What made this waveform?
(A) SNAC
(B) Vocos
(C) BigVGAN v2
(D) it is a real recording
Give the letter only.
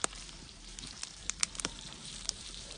C